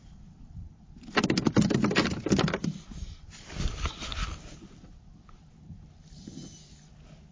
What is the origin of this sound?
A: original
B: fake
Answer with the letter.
A